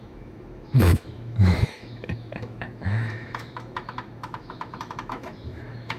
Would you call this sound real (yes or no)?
no